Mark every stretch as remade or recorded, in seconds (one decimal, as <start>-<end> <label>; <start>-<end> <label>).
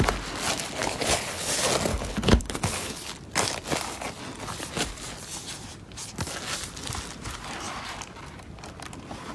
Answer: 0.0-0.8 recorded; 0.8-1.5 remade; 1.5-1.9 recorded; 1.9-3.1 remade; 3.1-9.3 recorded